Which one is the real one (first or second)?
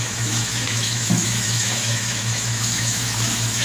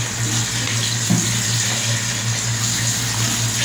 second